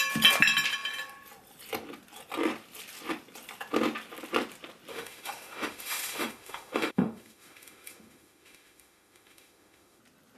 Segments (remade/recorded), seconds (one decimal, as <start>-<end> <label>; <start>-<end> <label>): 0.0-4.9 recorded; 4.9-10.0 remade; 10.0-10.4 recorded